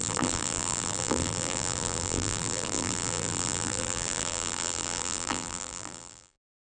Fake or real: fake